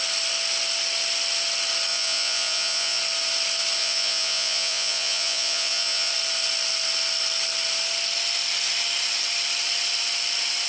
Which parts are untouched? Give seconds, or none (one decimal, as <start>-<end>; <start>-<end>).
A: 0.0-1.9; 3.0-3.8; 6.1-10.7